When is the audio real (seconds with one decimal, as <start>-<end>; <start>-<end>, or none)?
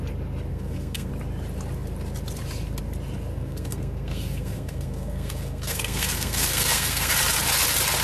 0.0-0.5; 1.1-3.3; 7.1-8.0